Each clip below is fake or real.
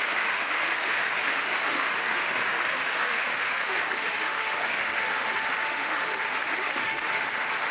fake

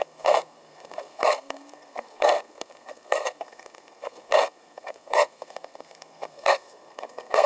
fake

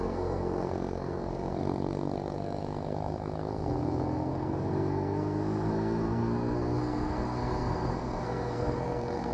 fake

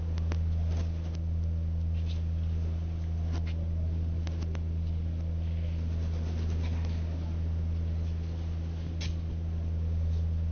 real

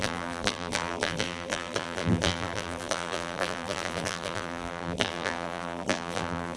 fake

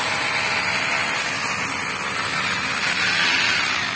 real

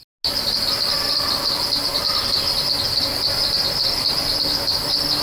real